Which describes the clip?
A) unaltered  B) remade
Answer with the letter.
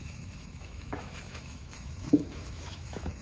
B